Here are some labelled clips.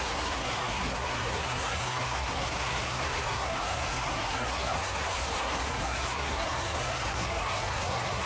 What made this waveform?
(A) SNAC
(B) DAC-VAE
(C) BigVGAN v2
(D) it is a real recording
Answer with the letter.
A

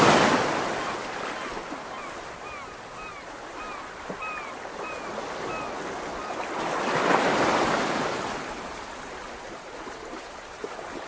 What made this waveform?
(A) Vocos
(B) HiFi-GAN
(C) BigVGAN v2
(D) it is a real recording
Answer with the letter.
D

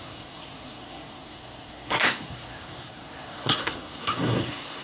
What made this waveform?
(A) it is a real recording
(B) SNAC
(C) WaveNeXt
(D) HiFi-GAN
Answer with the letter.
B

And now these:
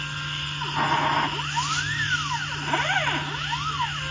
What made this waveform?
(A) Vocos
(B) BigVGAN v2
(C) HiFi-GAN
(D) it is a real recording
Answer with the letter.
D